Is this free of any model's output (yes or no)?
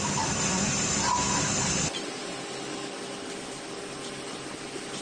yes